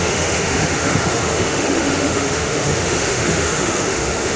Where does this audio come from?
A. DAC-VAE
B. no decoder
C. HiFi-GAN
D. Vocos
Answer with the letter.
A